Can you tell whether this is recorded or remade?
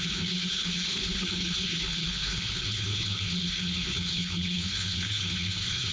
remade